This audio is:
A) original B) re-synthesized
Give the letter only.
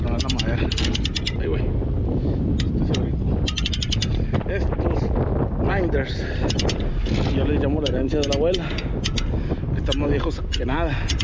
A